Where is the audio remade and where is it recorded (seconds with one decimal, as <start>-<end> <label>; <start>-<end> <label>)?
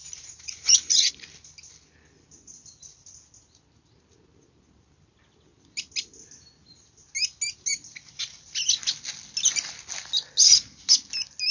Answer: 0.0-1.1 remade; 1.1-11.5 recorded